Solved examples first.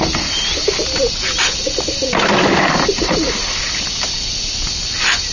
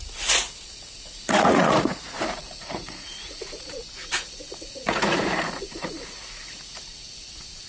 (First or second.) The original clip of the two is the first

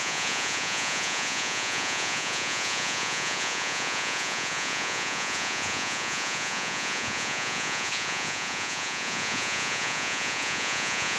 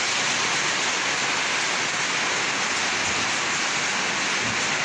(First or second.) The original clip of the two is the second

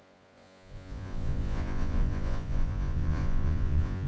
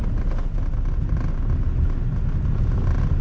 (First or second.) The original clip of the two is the second